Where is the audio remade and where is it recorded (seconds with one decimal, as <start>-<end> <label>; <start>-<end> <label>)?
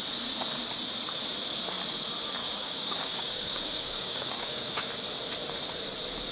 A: 0.0-2.4 recorded; 2.4-4.9 remade; 4.9-6.3 recorded